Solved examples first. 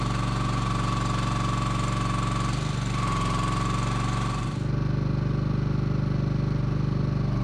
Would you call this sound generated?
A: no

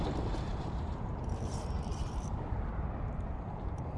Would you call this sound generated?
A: yes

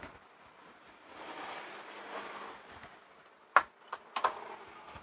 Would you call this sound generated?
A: no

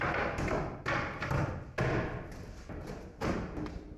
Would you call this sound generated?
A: no